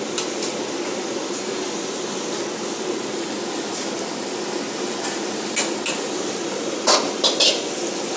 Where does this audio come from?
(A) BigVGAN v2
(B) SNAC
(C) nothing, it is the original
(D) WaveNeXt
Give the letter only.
C